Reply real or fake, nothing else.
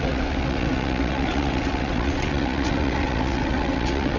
fake